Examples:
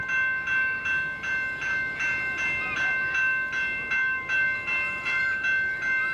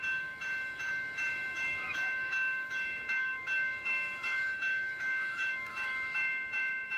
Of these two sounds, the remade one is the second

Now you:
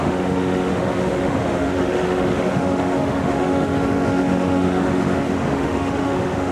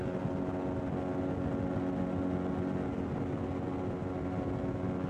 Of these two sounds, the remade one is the first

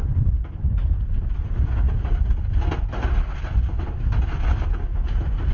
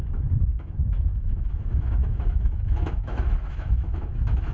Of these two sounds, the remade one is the second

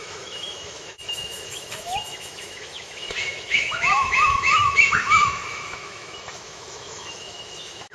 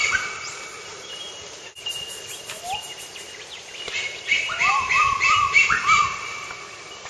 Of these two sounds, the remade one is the first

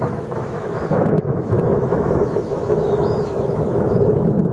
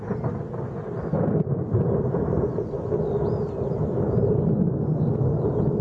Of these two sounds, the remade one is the first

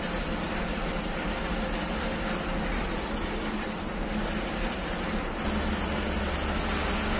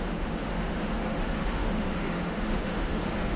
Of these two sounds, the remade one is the second